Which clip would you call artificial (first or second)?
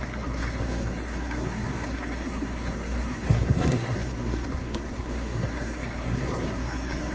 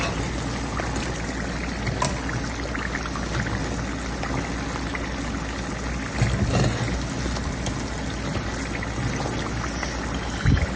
first